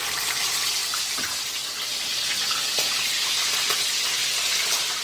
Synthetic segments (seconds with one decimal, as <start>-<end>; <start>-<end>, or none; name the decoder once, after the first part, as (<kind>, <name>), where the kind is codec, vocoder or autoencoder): none